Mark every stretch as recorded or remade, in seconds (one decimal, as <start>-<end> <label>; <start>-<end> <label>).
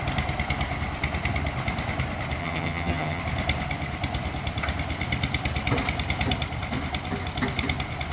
0.0-2.4 recorded; 2.4-3.2 remade; 3.2-8.1 recorded